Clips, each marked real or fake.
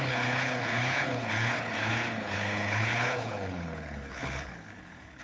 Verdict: fake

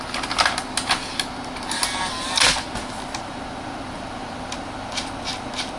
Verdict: real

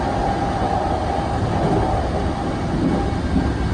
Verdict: real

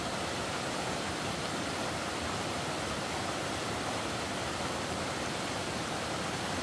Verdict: real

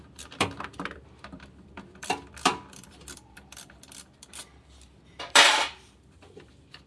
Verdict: fake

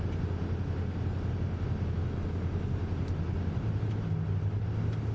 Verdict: real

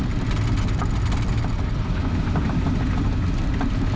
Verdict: real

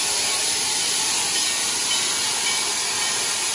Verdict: real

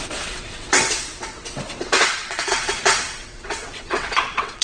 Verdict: fake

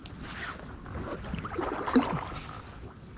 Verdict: real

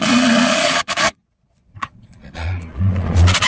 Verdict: fake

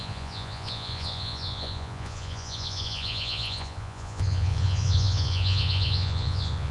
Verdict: fake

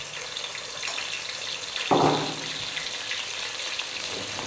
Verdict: real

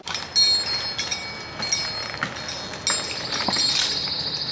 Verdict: real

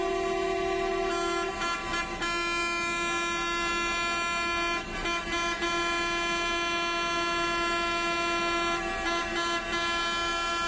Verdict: real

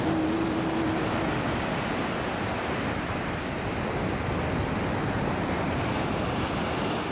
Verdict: real